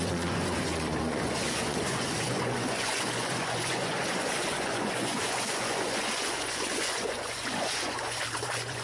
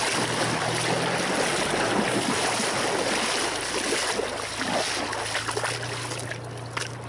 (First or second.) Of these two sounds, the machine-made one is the first